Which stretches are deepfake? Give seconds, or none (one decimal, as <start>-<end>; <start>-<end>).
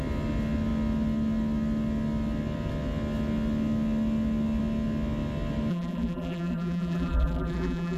5.7-8.0